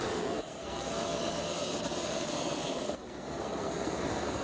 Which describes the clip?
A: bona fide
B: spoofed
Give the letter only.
B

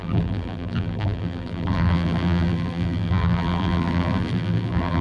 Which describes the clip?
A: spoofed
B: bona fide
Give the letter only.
A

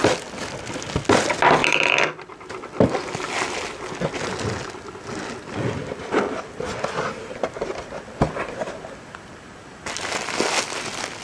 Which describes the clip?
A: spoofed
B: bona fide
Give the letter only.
B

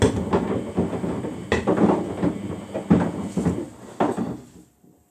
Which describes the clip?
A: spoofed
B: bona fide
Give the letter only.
B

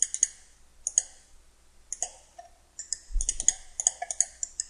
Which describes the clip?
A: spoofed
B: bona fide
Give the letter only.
B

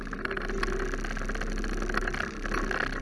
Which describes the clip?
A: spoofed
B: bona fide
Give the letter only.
B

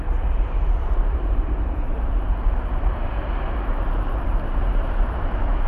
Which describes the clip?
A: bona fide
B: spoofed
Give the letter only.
B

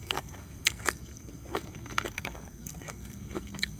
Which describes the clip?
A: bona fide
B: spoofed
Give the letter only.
B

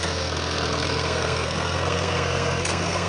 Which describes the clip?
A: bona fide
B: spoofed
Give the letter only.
B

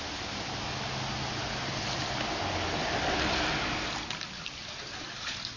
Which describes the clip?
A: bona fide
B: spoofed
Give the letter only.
A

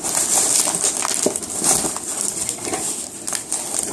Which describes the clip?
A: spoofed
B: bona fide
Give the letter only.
B